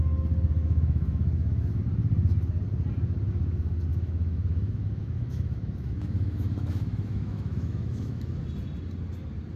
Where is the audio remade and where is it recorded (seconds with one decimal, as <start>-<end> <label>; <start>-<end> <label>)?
0.0-0.6 recorded; 0.6-1.8 remade; 1.8-3.9 recorded; 3.9-8.4 remade; 8.4-9.6 recorded